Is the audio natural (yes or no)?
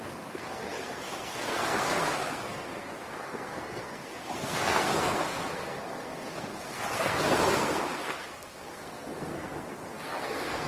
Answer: no